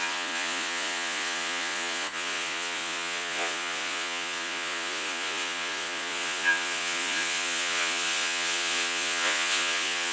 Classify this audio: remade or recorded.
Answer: remade